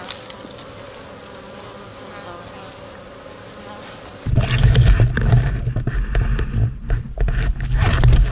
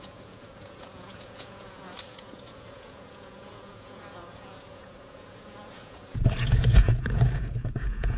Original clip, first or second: first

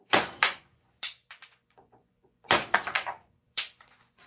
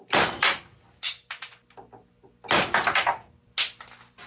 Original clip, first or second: second